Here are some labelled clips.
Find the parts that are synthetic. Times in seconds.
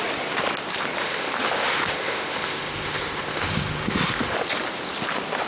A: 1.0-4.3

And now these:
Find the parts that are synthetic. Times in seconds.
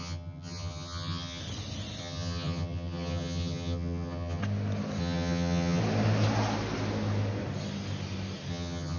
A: 0.0-1.4; 2.0-4.4; 5.0-5.8; 8.5-9.0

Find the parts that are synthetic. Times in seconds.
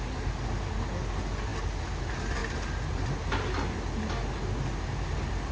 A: none